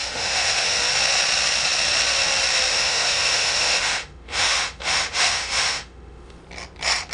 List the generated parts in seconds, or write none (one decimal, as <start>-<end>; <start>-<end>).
0.0-0.8; 2.7-6.4